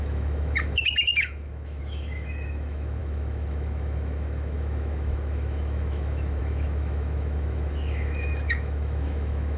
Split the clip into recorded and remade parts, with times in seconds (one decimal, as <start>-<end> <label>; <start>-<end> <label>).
0.0-9.6 remade